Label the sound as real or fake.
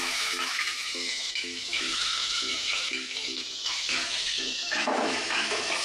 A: fake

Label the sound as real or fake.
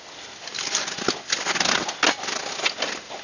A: real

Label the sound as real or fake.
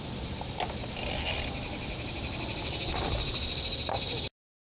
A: real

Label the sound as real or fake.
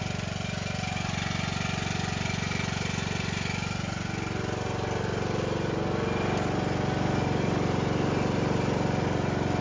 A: real